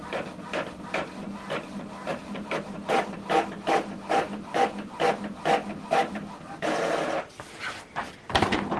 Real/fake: fake